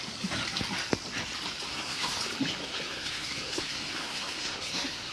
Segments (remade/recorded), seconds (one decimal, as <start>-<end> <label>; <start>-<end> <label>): 0.0-1.7 recorded; 1.7-2.2 remade; 2.2-2.6 recorded; 2.6-5.1 remade